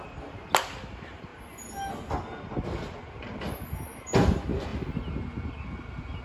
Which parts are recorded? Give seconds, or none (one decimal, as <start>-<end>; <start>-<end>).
0.0-6.2